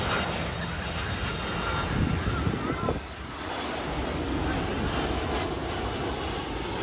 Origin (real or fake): real